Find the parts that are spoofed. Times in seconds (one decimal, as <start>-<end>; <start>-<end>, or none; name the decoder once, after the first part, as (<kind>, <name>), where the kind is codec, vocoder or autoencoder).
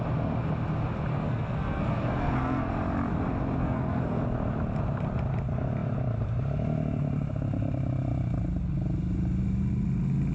1.1-2.7 (codec, SNAC); 3.6-4.2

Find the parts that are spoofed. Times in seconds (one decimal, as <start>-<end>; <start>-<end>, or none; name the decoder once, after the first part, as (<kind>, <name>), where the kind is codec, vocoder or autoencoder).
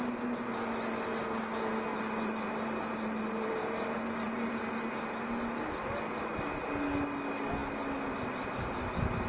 1.9-4.5 (vocoder, BigVGAN v2)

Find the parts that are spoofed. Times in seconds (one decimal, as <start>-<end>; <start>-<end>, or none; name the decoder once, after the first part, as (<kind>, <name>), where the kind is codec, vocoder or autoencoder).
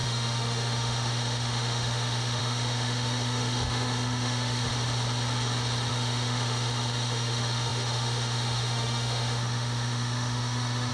0.0-4.7 (autoencoder, DAC-VAE); 5.9-10.9